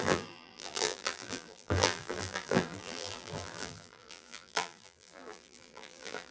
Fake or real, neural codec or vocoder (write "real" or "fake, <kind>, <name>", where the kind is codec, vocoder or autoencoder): fake, vocoder, BigVGAN v2